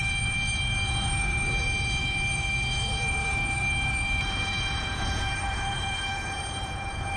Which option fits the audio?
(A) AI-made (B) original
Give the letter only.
A